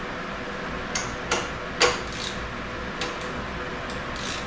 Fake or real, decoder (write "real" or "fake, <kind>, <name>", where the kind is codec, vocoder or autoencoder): real